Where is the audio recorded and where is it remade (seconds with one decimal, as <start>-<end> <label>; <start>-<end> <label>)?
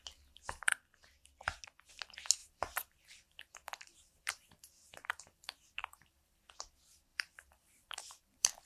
0.0-2.4 recorded; 2.4-6.5 remade; 6.5-7.1 recorded; 7.1-8.6 remade